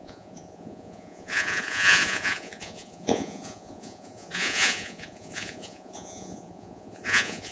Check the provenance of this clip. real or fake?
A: fake